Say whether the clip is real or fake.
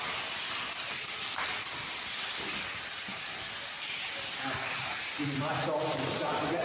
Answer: real